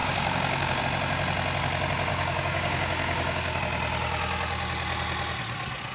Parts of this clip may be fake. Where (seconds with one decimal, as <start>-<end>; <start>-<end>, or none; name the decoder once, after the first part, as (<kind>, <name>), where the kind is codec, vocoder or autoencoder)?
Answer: 0.0-0.8 (codec, DAC); 2.1-3.6